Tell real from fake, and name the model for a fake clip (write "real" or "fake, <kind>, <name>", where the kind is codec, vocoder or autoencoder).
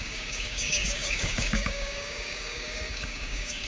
fake, codec, DAC